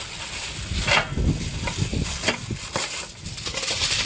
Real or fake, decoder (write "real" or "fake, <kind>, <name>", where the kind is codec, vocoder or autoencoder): real